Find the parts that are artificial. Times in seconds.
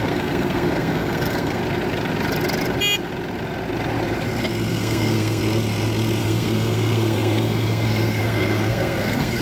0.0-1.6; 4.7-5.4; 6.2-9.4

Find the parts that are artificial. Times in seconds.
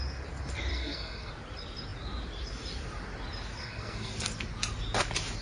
0.7-1.3; 3.6-4.1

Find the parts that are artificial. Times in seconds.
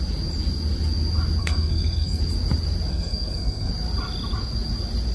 1.4-2.2; 2.9-3.7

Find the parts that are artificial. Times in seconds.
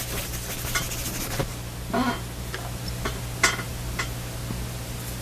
none